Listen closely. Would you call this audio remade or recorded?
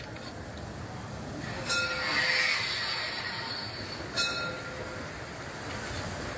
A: recorded